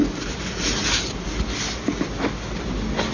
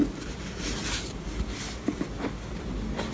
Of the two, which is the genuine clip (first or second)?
first